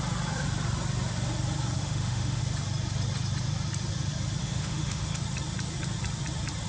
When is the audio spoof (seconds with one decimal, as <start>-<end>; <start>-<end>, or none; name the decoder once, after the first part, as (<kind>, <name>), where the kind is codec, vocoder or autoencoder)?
1.8-2.4 (autoencoder, DAC-VAE); 4.4-5.2